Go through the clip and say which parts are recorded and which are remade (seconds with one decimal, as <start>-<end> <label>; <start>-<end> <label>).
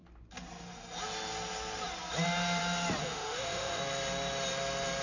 0.0-3.0 recorded; 3.0-3.8 remade; 3.8-5.0 recorded